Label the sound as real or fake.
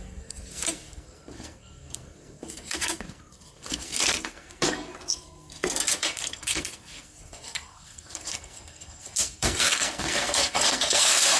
fake